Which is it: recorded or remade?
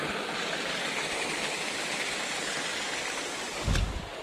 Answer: recorded